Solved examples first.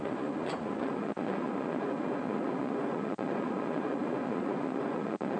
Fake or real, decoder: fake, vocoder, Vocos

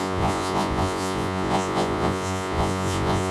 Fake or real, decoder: fake, vocoder, Vocos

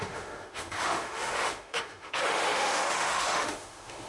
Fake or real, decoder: fake, autoencoder, DAC-VAE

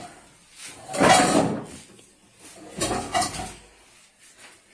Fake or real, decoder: real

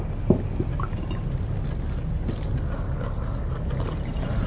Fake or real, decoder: real